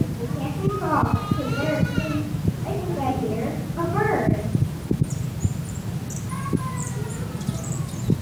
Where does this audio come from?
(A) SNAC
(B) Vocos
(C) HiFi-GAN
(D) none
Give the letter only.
D